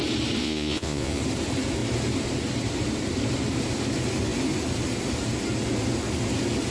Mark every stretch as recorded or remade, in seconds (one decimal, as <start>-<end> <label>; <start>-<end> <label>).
0.0-0.4 recorded; 0.4-1.2 remade; 1.2-6.7 recorded